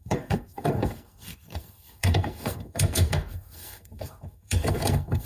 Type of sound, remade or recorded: remade